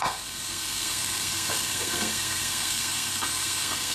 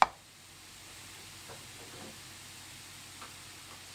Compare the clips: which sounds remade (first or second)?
first